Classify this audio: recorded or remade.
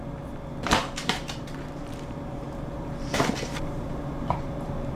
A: remade